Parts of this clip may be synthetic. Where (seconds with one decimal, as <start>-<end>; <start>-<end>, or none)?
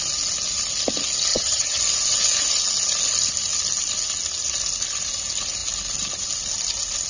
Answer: 1.3-1.8